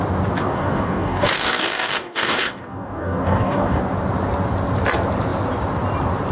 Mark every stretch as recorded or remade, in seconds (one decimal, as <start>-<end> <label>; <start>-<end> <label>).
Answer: 0.0-0.4 recorded; 0.4-3.8 remade; 3.8-6.3 recorded